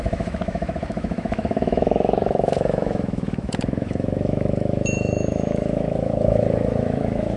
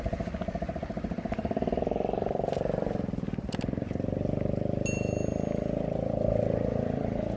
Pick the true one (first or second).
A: second